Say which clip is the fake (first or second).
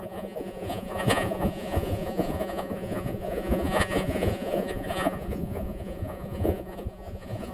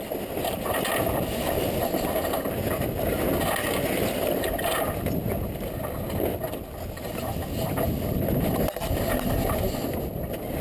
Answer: first